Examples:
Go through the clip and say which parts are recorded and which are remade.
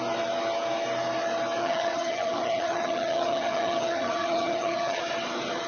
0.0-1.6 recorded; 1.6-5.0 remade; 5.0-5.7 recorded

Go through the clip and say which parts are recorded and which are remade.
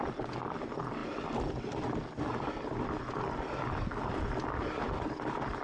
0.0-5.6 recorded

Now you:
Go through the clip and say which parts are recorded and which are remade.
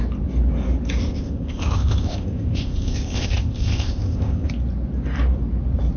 0.0-1.0 recorded; 1.0-4.5 remade; 4.5-6.0 recorded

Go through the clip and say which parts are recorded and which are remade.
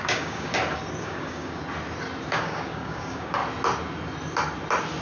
0.0-0.5 remade; 0.5-1.0 recorded; 1.0-1.6 remade; 1.6-2.3 recorded; 2.3-3.4 remade; 3.4-5.0 recorded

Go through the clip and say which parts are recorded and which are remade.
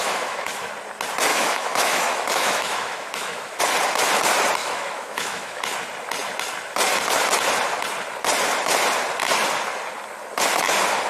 0.0-0.7 remade; 0.7-1.3 recorded; 1.3-3.6 remade; 3.6-4.6 recorded; 4.6-5.6 remade; 5.6-11.1 recorded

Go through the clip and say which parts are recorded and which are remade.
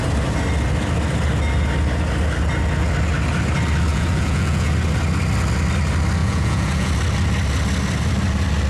0.0-3.9 recorded; 3.9-4.7 remade; 4.7-6.2 recorded; 6.2-6.9 remade; 6.9-8.7 recorded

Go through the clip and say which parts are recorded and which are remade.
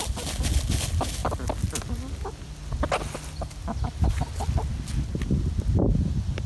0.0-6.5 recorded